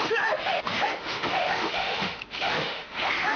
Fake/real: fake